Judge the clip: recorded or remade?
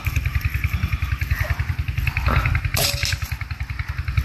recorded